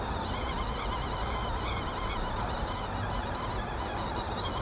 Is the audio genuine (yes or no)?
yes